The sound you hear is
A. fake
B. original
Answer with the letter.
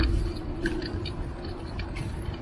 B